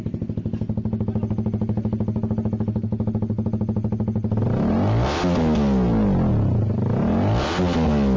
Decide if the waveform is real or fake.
real